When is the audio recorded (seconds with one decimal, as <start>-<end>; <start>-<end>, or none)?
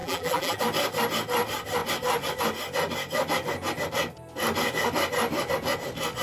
0.6-6.2